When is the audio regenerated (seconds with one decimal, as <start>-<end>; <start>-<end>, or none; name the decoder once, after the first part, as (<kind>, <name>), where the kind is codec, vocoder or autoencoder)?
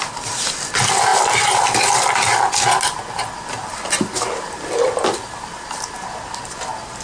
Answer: none